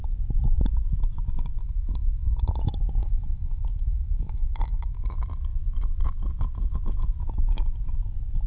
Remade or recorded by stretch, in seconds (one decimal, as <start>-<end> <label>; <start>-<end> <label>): 0.0-1.6 recorded; 1.6-2.6 remade; 2.6-3.0 recorded; 3.0-5.0 remade; 5.0-8.5 recorded